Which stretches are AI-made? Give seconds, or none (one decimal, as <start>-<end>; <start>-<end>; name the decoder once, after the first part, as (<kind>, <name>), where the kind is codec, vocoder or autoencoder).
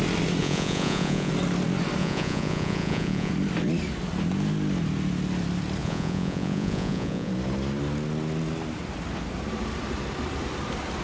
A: 0.4-1.3 (vocoder, Vocos); 2.0-3.3; 5.8-7.3